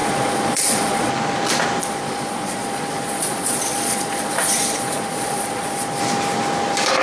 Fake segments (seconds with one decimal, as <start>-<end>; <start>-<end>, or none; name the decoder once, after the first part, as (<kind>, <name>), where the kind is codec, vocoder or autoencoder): 0.0-1.1 (vocoder, Vocos); 1.8-6.0